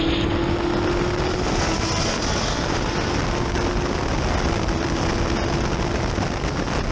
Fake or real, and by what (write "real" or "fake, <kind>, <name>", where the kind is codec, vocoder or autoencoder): real